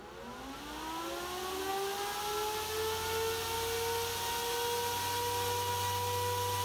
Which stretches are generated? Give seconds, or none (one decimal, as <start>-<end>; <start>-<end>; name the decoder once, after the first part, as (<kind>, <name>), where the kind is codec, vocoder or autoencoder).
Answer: none